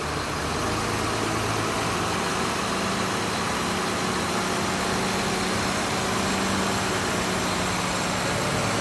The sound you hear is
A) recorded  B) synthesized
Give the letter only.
A